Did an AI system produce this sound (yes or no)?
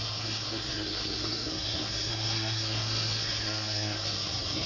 yes